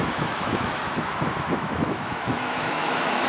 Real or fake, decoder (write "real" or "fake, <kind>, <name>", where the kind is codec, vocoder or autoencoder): fake, autoencoder, DAC-VAE